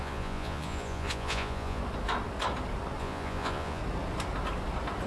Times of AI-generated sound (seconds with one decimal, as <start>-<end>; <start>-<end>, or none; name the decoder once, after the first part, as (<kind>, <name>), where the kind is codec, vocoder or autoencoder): 0.0-1.8 (vocoder, Vocos); 3.0-3.8